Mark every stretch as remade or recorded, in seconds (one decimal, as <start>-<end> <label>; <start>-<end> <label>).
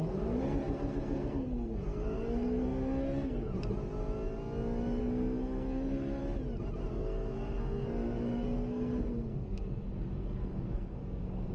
0.0-3.5 remade; 3.5-5.0 recorded; 5.0-6.2 remade; 6.2-6.9 recorded; 6.9-11.5 remade